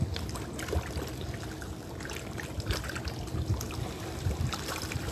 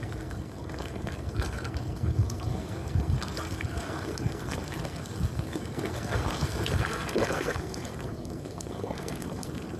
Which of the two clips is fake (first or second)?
second